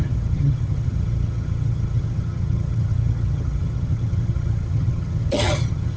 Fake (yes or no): yes